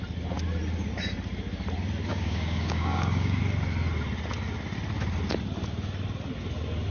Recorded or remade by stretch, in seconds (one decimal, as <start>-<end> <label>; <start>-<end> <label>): 0.0-2.1 recorded; 2.1-3.4 remade; 3.4-6.9 recorded